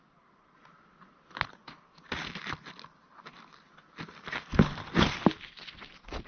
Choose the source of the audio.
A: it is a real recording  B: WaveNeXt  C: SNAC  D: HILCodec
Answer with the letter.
A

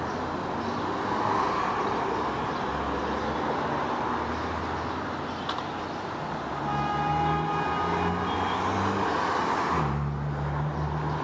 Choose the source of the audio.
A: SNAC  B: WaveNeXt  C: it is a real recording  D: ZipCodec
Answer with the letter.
C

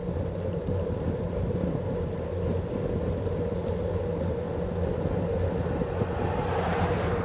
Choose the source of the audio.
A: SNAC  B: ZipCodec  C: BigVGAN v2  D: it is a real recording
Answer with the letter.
D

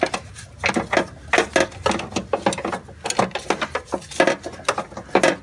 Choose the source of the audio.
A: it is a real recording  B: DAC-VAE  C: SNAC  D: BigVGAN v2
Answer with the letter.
A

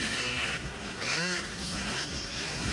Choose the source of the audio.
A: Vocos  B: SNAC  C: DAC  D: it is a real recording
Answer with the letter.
B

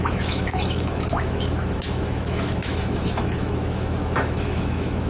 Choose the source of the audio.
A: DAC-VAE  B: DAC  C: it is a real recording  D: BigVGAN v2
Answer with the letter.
A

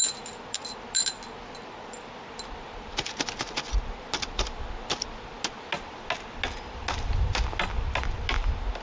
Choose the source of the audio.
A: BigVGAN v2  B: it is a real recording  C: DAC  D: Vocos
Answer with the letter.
B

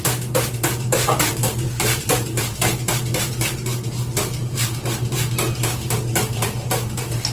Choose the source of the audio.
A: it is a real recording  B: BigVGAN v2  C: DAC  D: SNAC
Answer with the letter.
B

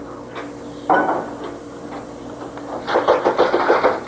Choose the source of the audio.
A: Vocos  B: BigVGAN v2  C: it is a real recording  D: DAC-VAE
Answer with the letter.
C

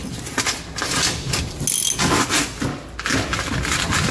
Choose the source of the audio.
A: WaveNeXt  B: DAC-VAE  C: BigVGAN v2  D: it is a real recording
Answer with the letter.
D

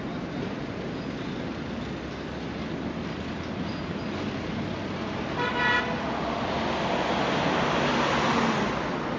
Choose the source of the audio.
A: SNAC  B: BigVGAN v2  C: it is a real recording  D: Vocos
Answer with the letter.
C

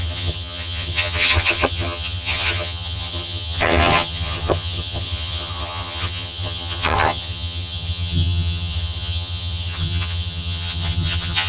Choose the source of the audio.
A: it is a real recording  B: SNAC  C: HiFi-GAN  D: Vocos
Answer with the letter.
C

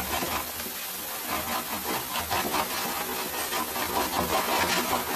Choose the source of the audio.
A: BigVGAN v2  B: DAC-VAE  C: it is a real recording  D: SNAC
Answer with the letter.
C